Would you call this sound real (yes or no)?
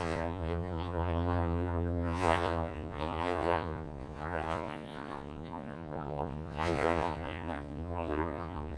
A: no